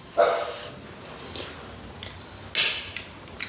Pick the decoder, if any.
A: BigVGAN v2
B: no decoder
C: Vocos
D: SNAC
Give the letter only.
B